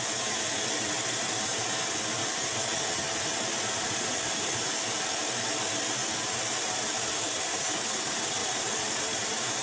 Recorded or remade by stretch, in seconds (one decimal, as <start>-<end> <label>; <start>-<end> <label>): 0.0-2.2 remade; 2.2-3.3 recorded; 3.3-8.4 remade; 8.4-8.9 recorded; 8.9-9.6 remade